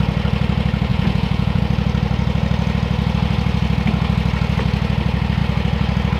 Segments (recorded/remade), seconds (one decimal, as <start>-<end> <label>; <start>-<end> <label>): 0.0-0.9 recorded; 0.9-1.6 remade; 1.6-6.2 recorded